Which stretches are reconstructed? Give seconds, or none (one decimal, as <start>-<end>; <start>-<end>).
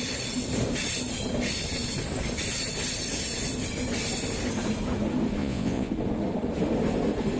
5.4-5.9